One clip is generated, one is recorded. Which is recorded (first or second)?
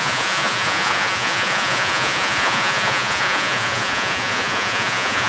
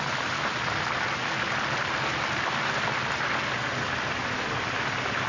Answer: second